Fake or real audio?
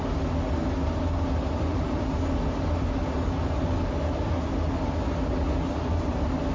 real